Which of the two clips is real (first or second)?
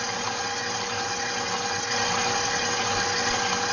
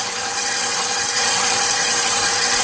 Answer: first